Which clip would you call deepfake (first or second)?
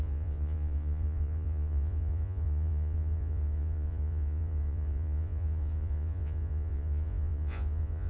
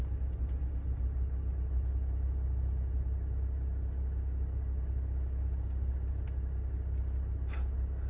first